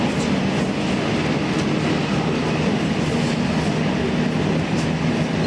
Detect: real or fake real